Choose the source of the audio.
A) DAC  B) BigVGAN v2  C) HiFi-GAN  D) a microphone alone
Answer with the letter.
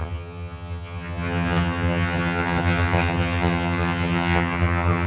C